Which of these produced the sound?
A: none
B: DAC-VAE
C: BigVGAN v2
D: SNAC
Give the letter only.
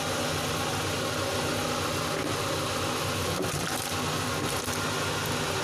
A